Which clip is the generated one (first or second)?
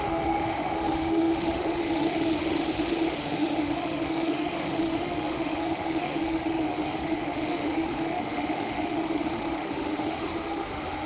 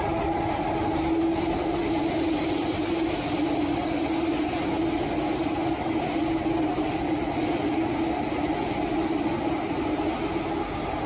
first